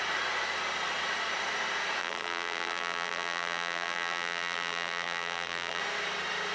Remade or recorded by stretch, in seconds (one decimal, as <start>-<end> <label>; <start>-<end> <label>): 0.0-2.0 recorded; 2.0-5.8 remade; 5.8-6.5 recorded